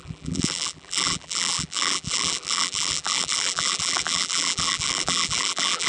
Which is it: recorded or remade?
remade